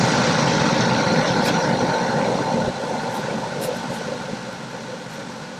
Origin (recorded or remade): recorded